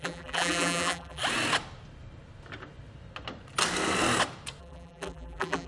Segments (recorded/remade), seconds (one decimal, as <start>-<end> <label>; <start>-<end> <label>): 0.0-1.2 remade; 1.2-4.6 recorded; 4.6-5.7 remade